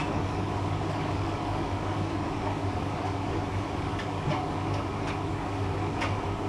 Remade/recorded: remade